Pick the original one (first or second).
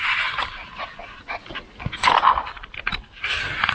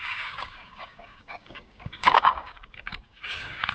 first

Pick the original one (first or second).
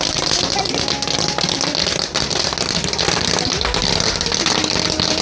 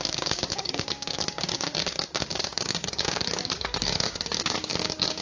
first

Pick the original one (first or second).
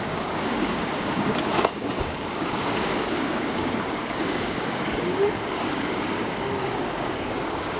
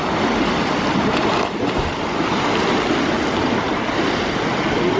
second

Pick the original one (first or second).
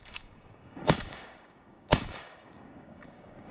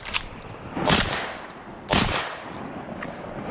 second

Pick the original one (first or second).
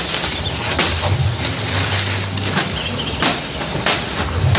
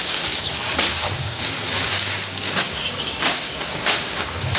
first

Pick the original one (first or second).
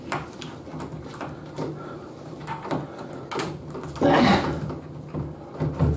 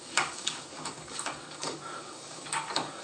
first